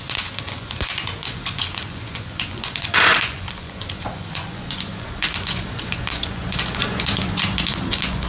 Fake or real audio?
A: fake